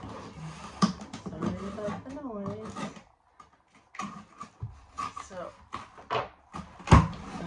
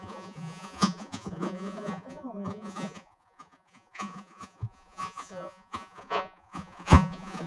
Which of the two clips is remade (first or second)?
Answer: second